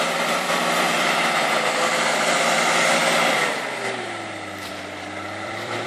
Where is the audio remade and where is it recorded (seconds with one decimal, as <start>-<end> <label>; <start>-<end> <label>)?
0.0-5.9 remade